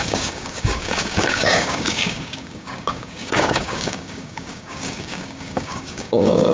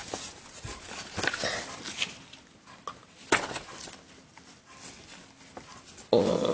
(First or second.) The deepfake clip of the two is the first